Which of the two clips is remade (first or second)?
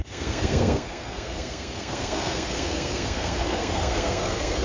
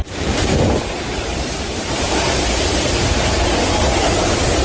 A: first